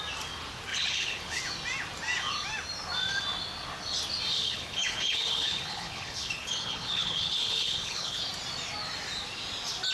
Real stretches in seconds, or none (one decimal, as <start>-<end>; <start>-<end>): 0.0-0.7; 1.4-4.3; 8.2-9.9